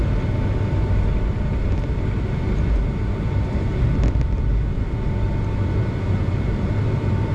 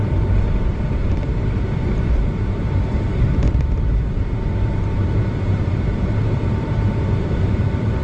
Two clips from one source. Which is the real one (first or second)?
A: first